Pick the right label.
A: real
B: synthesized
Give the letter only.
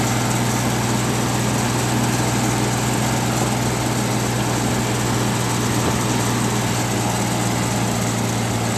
A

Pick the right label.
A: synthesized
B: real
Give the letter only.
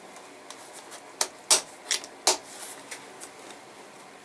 B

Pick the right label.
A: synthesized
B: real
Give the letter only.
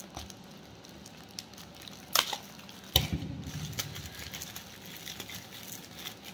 B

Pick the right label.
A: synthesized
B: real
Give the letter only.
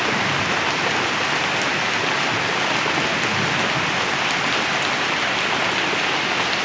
B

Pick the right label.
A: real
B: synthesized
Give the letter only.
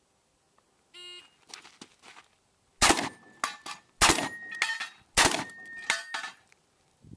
A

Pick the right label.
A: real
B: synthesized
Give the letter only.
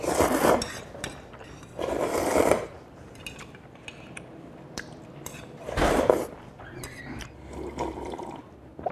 B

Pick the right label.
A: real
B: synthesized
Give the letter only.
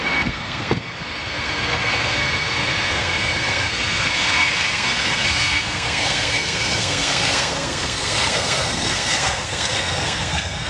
B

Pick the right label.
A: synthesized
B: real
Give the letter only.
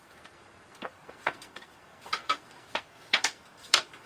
A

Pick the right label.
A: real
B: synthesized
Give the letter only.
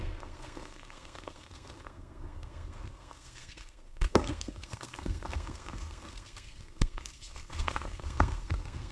B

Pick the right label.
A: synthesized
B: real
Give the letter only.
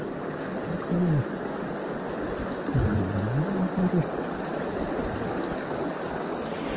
B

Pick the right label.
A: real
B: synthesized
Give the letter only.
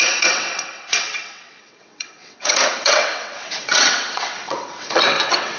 B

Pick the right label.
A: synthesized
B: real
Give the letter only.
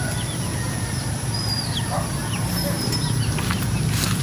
B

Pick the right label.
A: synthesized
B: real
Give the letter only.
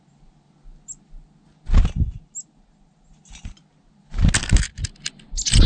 B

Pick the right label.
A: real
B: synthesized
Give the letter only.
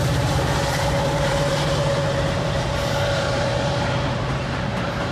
B